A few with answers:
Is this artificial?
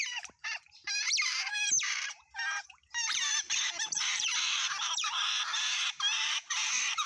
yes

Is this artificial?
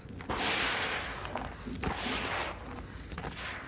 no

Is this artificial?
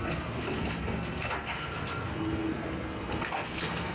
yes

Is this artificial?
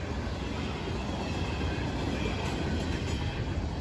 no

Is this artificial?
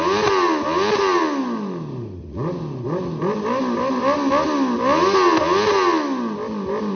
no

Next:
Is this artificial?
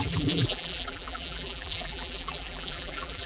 yes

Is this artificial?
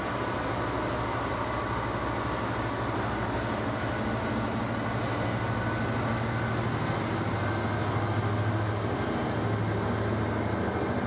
no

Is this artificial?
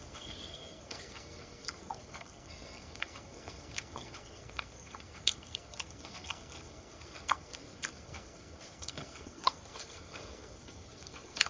yes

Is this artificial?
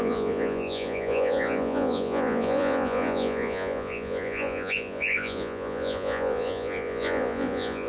yes